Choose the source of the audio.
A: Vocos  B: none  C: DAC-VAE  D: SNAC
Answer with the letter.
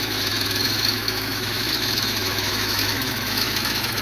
C